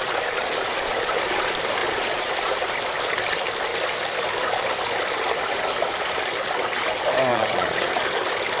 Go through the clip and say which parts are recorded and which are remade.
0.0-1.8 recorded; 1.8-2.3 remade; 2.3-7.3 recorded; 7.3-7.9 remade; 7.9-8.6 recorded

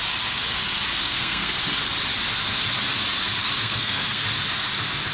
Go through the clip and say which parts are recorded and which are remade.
0.0-1.0 recorded; 1.0-1.6 remade; 1.6-3.6 recorded; 3.6-4.2 remade; 4.2-5.1 recorded

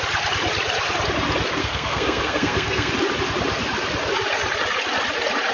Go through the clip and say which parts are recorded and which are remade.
0.0-1.6 recorded; 1.6-2.9 remade; 2.9-5.5 recorded

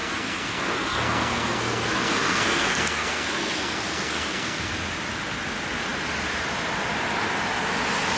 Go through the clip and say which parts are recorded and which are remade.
0.0-4.7 remade; 4.7-8.2 recorded